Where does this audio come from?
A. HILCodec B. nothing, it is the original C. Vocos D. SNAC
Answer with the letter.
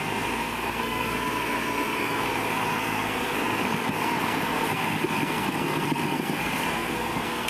D